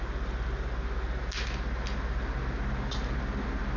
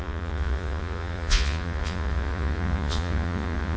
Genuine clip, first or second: first